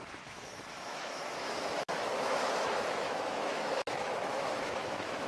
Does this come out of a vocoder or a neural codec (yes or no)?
yes